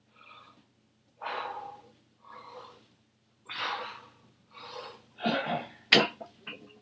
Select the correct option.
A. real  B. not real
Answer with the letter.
A